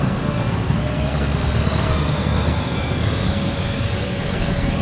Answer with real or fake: fake